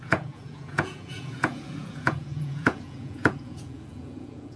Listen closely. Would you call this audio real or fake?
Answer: fake